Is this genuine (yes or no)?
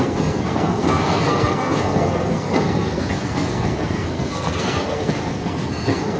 no